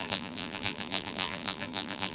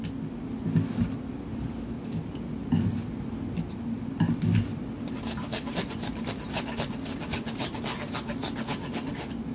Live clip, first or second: second